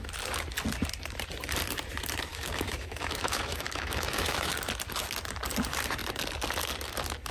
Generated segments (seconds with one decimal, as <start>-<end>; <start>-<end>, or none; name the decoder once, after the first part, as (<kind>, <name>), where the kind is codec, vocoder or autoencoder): 2.3-4.5 (autoencoder, DAC-VAE)

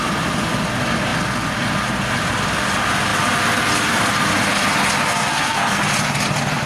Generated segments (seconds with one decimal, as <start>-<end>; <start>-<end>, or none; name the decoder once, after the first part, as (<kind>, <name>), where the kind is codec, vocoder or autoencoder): 5.1-5.8 (codec, SNAC)

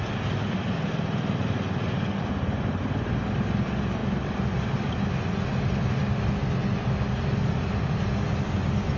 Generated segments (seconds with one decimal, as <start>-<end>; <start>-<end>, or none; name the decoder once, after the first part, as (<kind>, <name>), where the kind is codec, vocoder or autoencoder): none

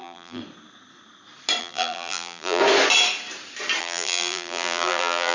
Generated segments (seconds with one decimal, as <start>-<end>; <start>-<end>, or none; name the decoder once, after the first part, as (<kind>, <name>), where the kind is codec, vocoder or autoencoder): 0.0-0.4 (vocoder, BigVGAN v2); 1.6-2.6; 3.8-5.3

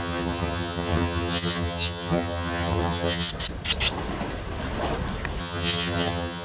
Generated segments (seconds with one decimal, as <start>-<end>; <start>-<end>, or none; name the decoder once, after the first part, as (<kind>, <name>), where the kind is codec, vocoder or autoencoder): 0.0-3.3 (vocoder, HiFi-GAN); 5.4-6.4

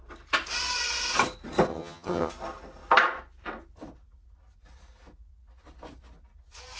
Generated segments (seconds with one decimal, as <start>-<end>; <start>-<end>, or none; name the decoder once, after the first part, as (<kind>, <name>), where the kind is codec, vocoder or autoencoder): 1.7-2.3 (vocoder, HiFi-GAN)

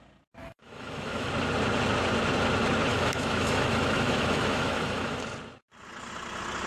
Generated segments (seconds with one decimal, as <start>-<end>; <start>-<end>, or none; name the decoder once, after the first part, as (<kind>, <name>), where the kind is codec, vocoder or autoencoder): 0.4-1.3 (autoencoder, DAC-VAE); 2.9-5.2